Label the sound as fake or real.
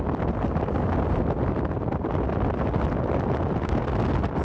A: real